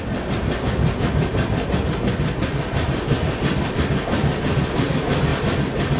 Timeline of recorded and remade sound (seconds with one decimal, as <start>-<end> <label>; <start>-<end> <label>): 0.0-6.0 recorded